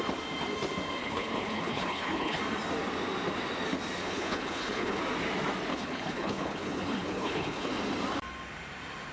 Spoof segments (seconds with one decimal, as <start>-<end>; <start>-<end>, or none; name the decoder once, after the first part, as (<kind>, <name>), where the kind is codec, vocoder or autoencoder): 1.0-2.4 (codec, HILCodec); 4.0-5.0; 5.7-7.7